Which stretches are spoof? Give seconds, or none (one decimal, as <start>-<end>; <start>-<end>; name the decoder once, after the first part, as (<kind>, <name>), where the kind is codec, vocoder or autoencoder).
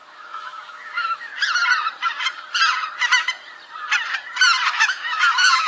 0.0-1.3 (autoencoder, DAC-VAE); 4.7-5.7